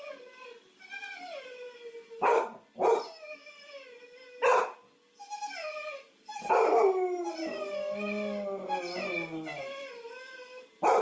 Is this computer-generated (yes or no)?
no